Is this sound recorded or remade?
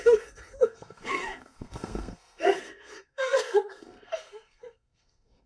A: remade